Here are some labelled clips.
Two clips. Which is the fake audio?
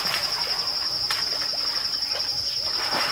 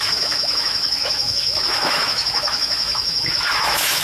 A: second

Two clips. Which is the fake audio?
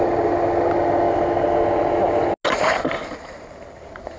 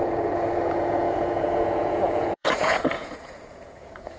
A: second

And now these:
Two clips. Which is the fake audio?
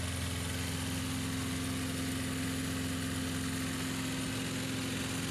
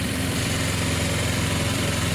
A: second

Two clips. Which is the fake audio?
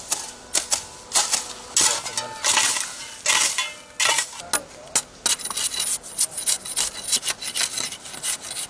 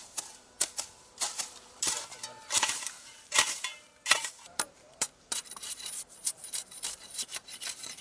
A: second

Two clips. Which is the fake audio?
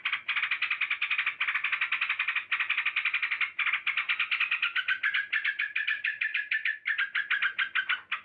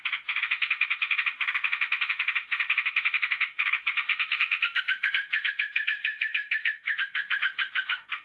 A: second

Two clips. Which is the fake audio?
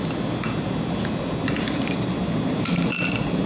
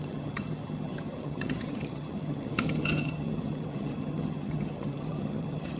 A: second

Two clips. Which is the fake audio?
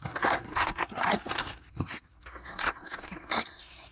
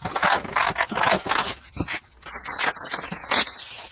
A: first